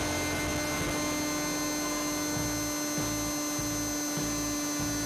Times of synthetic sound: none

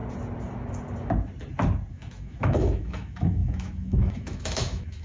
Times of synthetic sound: 1.9-5.0 (autoencoder, DAC-VAE)